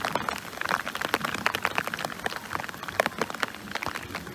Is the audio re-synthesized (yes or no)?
no